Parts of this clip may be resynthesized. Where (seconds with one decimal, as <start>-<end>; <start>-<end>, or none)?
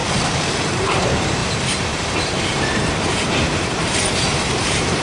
0.6-5.0